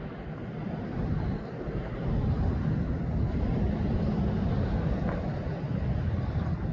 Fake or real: real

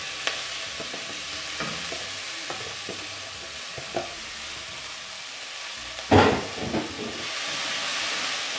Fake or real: real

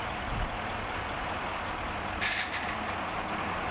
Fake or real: real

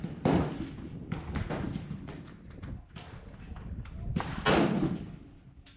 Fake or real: real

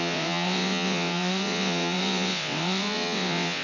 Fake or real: fake